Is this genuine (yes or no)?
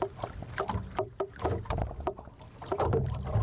yes